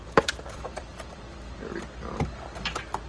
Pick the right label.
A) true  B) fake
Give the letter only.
B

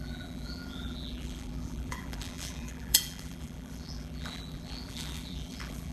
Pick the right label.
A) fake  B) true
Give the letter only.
A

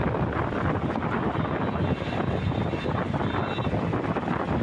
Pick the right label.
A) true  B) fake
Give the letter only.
A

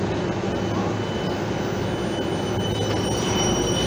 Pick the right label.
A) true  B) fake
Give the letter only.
A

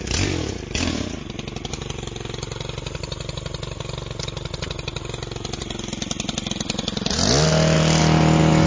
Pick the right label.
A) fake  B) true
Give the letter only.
B